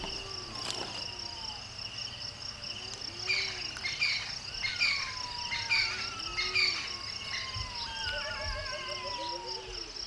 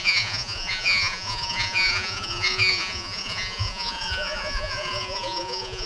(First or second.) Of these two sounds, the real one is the first